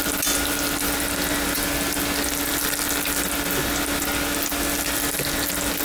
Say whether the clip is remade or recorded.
recorded